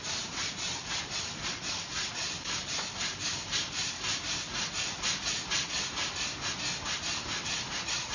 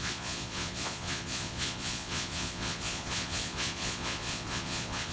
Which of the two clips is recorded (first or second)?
first